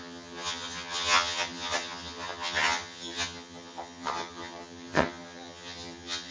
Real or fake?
fake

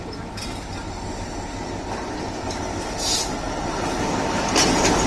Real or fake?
real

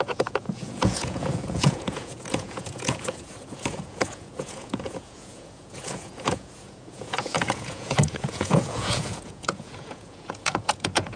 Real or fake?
fake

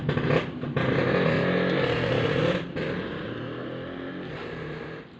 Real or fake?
real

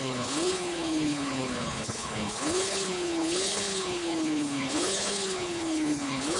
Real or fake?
fake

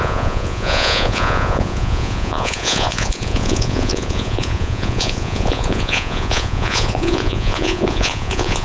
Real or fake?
fake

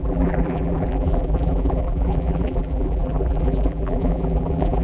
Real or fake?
fake